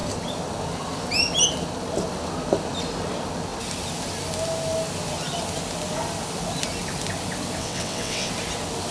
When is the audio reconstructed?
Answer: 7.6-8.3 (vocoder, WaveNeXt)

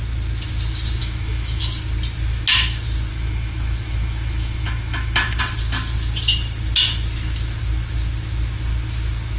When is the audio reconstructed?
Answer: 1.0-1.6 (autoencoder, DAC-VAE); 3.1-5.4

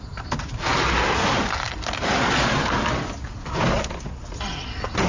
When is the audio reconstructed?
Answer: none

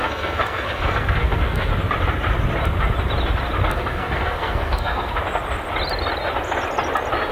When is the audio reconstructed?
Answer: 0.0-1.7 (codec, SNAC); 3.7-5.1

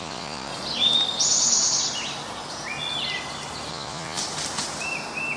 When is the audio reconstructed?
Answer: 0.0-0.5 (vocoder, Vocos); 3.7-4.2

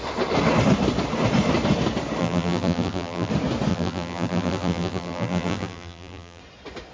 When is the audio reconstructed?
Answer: 2.2-3.3 (vocoder, BigVGAN v2); 3.7-6.4

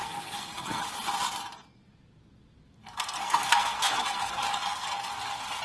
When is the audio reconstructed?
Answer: 0.0-0.8 (codec, SNAC); 2.8-5.1

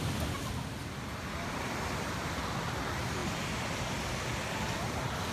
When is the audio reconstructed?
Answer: 0.8-1.7 (vocoder, BigVGAN v2); 3.2-4.0